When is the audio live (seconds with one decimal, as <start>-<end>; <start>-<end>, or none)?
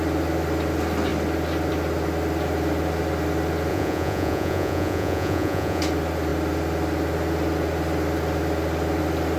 0.0-3.7; 5.8-9.4